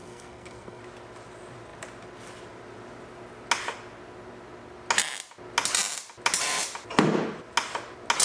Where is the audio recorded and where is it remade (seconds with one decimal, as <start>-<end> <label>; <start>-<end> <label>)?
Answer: 0.0-0.8 remade; 0.8-8.2 recorded

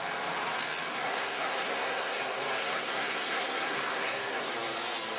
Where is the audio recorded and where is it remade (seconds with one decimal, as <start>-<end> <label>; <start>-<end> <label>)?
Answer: 0.0-0.9 recorded; 0.9-2.2 remade; 2.2-2.6 recorded; 2.6-4.5 remade; 4.5-5.2 recorded

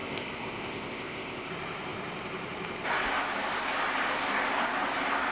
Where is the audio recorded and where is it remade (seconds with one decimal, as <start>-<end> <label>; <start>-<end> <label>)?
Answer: 0.0-1.5 remade; 1.5-5.3 recorded

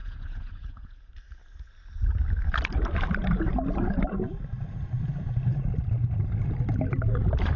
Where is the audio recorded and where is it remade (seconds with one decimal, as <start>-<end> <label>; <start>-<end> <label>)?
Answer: 0.0-1.1 remade; 1.1-7.6 recorded